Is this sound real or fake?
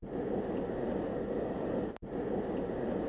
real